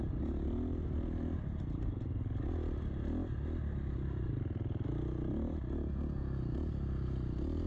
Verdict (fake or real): real